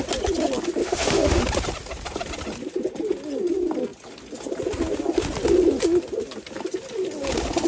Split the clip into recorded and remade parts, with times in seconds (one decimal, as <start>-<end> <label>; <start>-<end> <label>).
0.0-0.8 recorded; 0.8-1.4 remade; 1.4-7.7 recorded